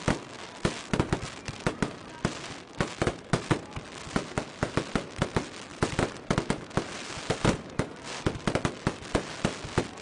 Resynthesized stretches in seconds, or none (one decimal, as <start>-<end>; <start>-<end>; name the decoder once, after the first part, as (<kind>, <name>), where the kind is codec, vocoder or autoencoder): none